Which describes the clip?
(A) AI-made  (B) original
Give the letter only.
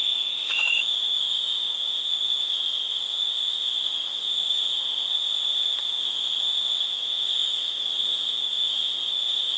A